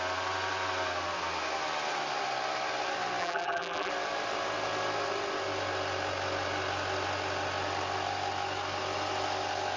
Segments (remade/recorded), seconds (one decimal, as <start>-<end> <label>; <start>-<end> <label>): 0.0-3.2 recorded; 3.2-3.9 remade; 3.9-9.8 recorded